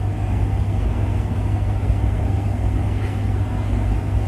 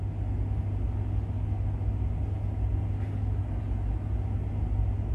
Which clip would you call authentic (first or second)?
second